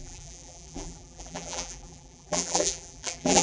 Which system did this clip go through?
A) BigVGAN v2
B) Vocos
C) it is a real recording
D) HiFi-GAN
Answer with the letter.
A